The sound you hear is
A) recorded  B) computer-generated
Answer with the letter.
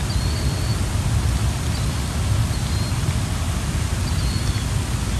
A